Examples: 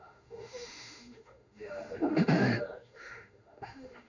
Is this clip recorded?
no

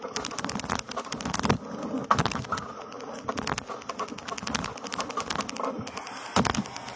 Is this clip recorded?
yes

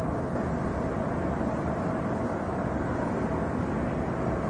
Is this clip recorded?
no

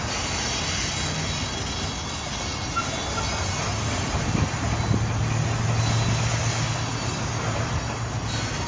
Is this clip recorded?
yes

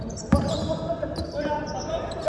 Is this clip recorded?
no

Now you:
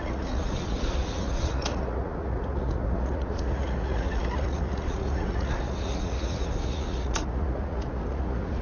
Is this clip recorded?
no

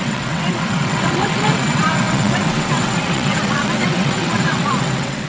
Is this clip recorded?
no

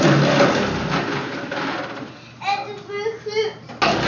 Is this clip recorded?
yes